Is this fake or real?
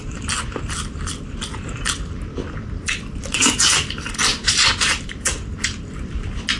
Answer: fake